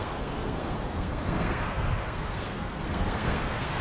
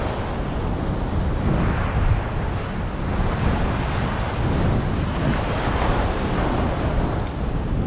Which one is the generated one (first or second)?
first